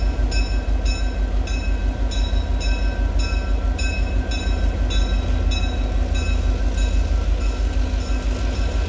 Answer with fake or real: real